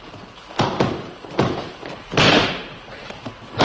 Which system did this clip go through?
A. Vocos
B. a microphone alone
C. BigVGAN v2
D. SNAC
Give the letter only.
B